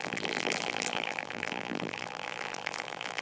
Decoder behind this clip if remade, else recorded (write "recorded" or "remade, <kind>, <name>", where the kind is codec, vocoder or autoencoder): remade, vocoder, BigVGAN v2